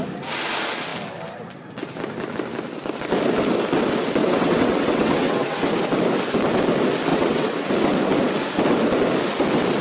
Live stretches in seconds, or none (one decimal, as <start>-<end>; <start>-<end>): 0.0-4.2; 5.6-7.1; 7.7-9.8

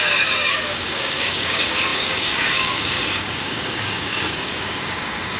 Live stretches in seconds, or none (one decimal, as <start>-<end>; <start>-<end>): none

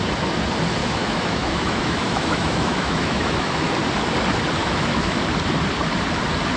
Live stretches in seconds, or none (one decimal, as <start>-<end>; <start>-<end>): 0.0-0.8; 3.7-4.6; 5.2-6.6

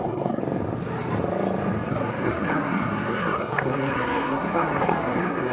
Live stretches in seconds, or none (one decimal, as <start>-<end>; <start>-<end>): 0.4-1.9

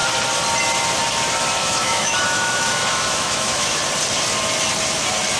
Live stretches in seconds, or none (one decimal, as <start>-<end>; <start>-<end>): 0.0-1.6; 3.8-5.4